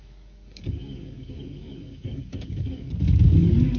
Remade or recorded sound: remade